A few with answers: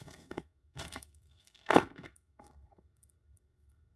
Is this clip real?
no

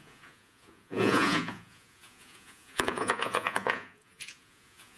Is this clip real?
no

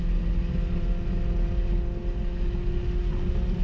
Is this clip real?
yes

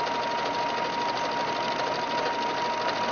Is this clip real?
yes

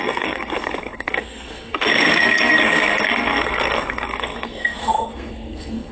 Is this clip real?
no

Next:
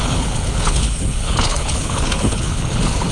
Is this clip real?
no